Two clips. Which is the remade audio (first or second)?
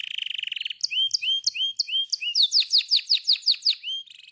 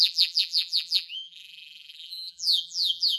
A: second